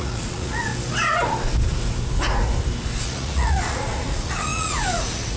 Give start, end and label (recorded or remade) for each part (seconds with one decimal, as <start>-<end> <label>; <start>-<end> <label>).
0.0-0.7 remade; 0.7-3.0 recorded; 3.0-5.4 remade